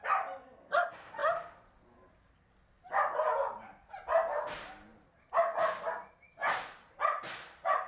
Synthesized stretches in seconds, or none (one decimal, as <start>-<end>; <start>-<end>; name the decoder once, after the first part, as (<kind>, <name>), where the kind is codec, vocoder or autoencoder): none